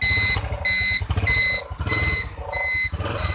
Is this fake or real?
real